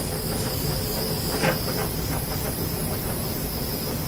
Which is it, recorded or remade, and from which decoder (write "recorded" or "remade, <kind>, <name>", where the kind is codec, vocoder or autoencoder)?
recorded